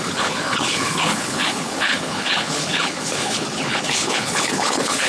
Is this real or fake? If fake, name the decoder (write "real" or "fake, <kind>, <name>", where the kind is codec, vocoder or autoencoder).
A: fake, codec, HILCodec